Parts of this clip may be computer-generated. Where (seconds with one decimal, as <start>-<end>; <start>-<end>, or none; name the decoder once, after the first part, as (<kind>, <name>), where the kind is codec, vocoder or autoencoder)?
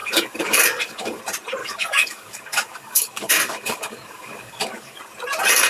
0.0-1.2 (codec, DAC); 1.6-5.0